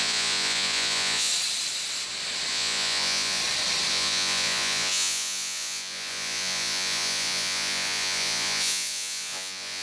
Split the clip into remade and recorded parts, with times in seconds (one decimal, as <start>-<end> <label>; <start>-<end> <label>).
0.0-1.3 remade; 1.3-2.5 recorded; 2.5-3.4 remade; 3.4-3.9 recorded; 3.9-9.8 remade